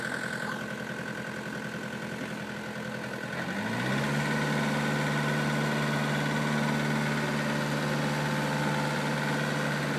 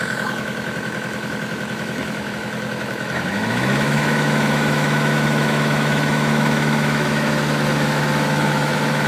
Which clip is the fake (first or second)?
second